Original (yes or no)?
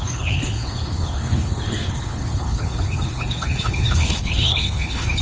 no